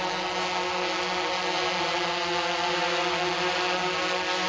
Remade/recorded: recorded